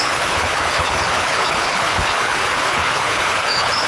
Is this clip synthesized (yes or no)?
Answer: yes